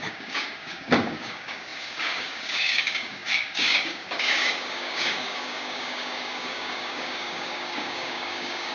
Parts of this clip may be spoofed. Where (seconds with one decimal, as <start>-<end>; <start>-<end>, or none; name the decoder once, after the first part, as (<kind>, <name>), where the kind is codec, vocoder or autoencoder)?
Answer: 0.0-8.7 (codec, DAC)